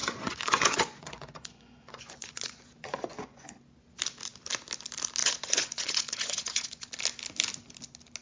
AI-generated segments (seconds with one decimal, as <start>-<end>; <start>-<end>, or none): 0.0-3.5; 5.2-6.9